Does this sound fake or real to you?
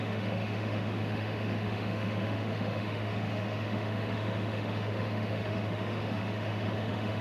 fake